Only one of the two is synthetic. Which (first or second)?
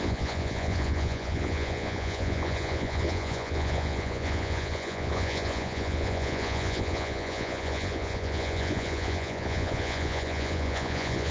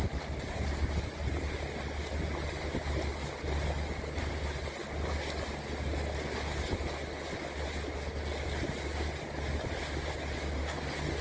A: first